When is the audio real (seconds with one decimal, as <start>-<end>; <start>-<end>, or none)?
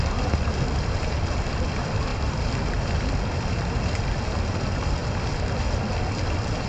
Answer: 0.0-6.7